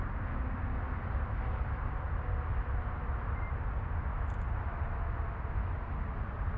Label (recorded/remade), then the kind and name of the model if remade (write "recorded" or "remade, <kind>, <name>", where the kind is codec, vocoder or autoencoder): recorded